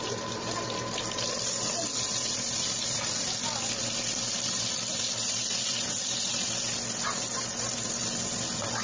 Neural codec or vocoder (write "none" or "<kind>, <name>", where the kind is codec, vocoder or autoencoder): none